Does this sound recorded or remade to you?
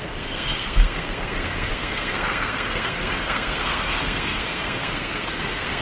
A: remade